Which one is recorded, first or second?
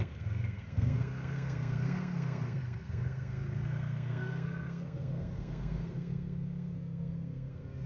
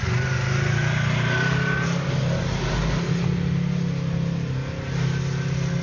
second